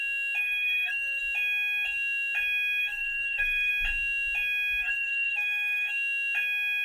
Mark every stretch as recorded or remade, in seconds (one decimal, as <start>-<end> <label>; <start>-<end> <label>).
0.0-0.4 recorded; 0.4-1.2 remade; 1.2-2.8 recorded; 2.8-3.7 remade; 3.7-4.8 recorded; 4.8-5.9 remade; 5.9-6.8 recorded